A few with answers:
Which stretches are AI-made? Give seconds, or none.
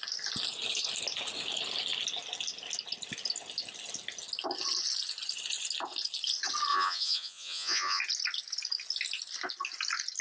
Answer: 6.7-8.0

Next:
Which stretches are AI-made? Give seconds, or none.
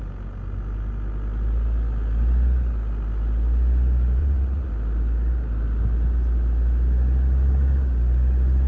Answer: 4.2-4.7